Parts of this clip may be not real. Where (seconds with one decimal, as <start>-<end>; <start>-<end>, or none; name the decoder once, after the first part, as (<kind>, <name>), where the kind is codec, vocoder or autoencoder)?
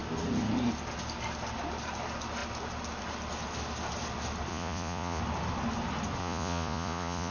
4.5-5.2 (vocoder, Vocos); 6.2-7.3